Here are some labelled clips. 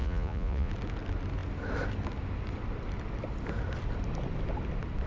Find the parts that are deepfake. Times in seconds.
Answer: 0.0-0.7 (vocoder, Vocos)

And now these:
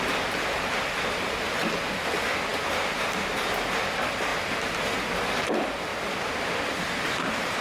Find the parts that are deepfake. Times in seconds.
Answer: none

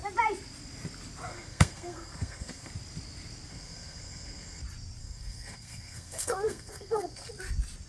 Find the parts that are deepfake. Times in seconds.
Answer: 1.3-2.7 (codec, SNAC); 3.5-4.6; 5.0-7.3

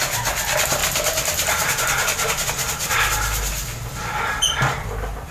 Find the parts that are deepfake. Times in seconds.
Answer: none